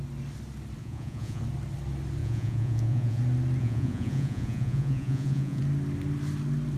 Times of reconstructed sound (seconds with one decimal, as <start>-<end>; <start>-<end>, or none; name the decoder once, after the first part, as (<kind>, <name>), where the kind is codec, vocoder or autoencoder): 0.8-1.4 (vocoder, Vocos); 2.2-3.2; 3.6-5.6